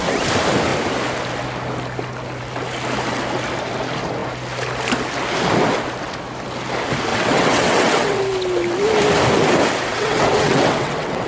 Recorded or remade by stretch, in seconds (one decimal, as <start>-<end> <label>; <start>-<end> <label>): 0.0-7.1 recorded; 7.1-8.2 remade; 8.2-9.9 recorded; 9.9-11.3 remade

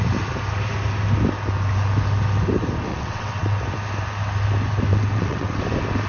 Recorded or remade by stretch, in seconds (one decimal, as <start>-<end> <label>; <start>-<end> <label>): 0.0-2.9 recorded; 2.9-3.6 remade; 3.6-4.9 recorded; 4.9-5.6 remade; 5.6-6.1 recorded

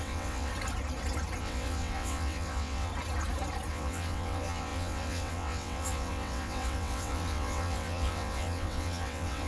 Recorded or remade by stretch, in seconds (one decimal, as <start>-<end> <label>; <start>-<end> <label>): 0.0-0.5 remade; 0.5-1.4 recorded; 1.4-2.9 remade; 2.9-3.7 recorded; 3.7-9.5 remade

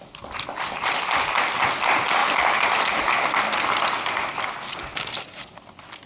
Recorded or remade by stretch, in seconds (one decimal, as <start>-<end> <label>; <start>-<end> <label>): 0.0-6.1 recorded